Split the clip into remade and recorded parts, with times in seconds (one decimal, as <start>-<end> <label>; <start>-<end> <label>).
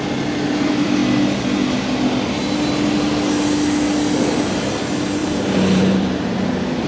0.0-5.2 recorded; 5.2-6.5 remade; 6.5-6.9 recorded